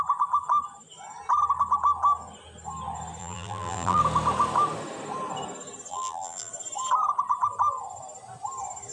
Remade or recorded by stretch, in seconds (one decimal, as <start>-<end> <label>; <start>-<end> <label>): 0.0-3.2 recorded; 3.2-4.0 remade; 4.0-5.9 recorded; 5.9-6.5 remade; 6.5-8.9 recorded